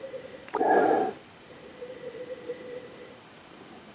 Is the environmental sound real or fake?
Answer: real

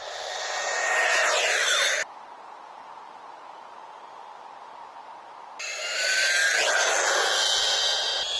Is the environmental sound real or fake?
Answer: real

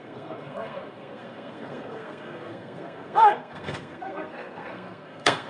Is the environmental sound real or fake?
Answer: fake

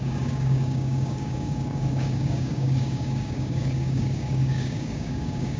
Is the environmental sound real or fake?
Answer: fake